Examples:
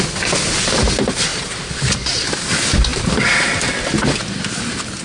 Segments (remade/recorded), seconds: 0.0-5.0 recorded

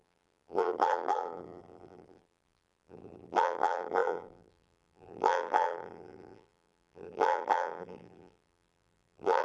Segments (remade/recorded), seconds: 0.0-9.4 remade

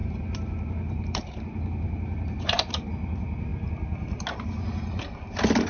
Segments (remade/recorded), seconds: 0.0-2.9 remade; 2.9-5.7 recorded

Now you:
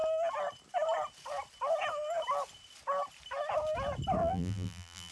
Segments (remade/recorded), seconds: 0.0-4.2 recorded; 4.2-5.1 remade

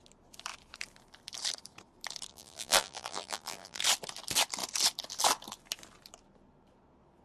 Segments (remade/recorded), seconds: 0.0-2.3 recorded; 2.3-3.8 remade; 3.8-7.2 recorded

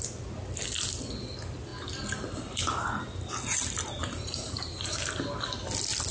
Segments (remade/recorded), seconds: 0.0-4.0 recorded; 4.0-5.0 remade; 5.0-6.1 recorded

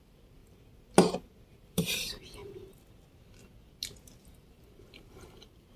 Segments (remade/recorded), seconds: 0.0-0.4 remade; 0.4-1.5 recorded; 1.5-2.4 remade; 2.4-4.2 recorded; 4.2-5.8 remade